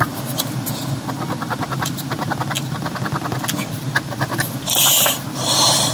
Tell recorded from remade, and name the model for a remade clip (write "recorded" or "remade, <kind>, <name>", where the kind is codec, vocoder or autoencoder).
recorded